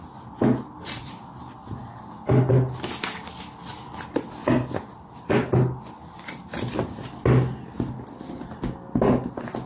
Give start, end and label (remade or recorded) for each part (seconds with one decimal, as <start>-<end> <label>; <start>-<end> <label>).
0.0-9.7 recorded